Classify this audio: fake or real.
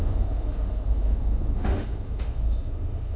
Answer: fake